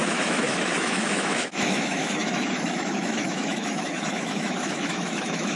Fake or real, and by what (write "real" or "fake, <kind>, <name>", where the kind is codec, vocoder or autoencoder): fake, autoencoder, DAC-VAE